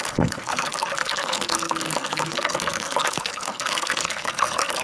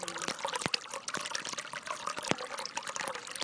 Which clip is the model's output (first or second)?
first